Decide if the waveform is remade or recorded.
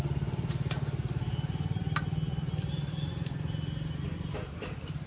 recorded